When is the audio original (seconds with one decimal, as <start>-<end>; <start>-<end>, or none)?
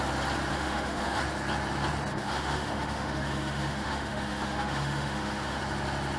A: 0.0-0.5; 1.2-2.1; 5.6-6.2